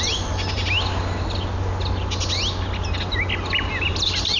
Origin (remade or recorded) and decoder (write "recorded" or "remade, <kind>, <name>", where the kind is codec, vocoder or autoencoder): recorded